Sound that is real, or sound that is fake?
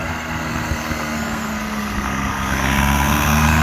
fake